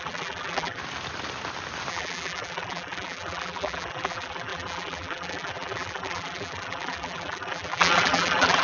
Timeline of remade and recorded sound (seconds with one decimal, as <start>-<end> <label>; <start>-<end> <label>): 0.0-0.8 remade; 0.8-1.9 recorded; 1.9-8.6 remade